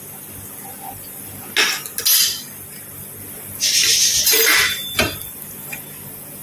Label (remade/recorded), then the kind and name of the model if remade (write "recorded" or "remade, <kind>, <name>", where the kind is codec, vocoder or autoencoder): recorded